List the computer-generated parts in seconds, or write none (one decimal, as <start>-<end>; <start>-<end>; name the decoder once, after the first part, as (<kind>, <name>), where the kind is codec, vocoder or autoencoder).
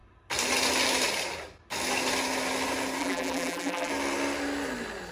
3.0-3.9 (vocoder, BigVGAN v2)